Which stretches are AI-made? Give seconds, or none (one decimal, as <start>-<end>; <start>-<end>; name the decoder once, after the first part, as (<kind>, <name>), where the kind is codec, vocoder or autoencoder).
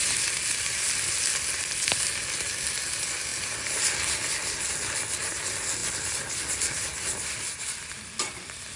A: none